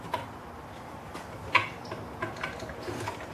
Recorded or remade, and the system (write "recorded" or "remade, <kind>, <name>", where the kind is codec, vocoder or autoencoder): recorded